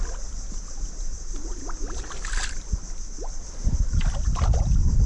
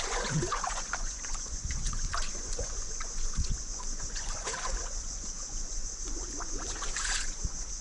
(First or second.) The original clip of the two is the first